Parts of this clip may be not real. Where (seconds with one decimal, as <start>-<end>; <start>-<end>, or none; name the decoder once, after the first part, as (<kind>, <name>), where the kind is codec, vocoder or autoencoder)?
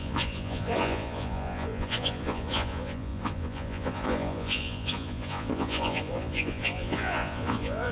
0.0-7.9 (vocoder, Vocos)